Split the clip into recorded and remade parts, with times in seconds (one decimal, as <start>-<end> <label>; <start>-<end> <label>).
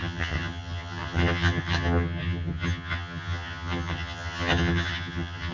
0.0-5.5 remade